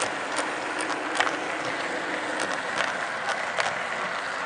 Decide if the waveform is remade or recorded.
recorded